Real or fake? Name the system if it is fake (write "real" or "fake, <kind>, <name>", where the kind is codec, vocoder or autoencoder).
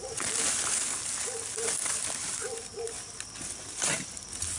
real